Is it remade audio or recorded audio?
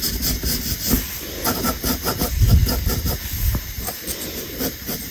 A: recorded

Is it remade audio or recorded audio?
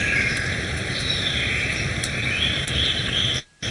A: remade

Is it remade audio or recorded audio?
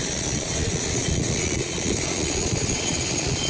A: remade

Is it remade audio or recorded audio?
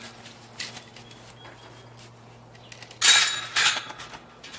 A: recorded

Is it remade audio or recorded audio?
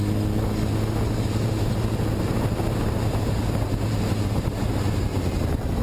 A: recorded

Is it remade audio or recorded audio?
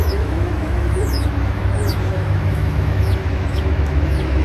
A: remade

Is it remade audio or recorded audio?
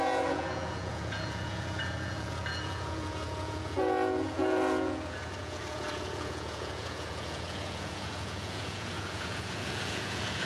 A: remade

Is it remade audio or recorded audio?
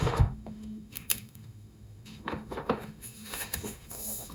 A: remade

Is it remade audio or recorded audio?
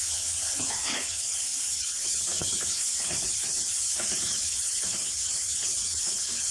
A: remade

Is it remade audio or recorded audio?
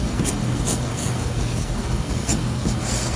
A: remade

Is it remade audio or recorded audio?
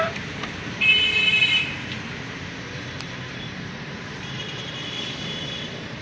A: remade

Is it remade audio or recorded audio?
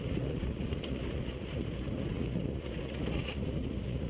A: remade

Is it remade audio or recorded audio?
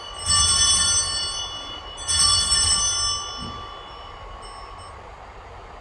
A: recorded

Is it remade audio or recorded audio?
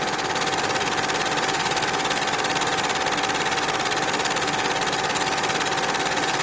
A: recorded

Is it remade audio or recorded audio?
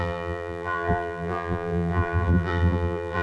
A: remade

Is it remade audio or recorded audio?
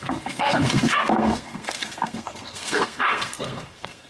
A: remade